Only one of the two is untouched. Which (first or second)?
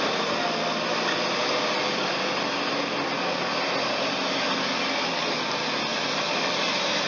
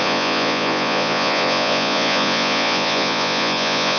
first